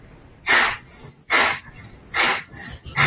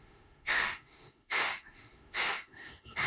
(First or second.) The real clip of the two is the first